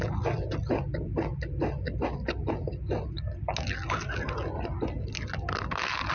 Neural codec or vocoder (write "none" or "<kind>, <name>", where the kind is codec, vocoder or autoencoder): none